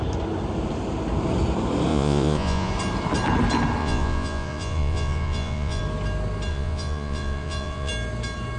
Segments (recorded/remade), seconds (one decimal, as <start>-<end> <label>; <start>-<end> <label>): 0.0-1.9 recorded; 1.9-2.7 remade; 2.7-3.8 recorded; 3.8-5.8 remade; 5.8-6.5 recorded; 6.5-7.9 remade; 7.9-8.6 recorded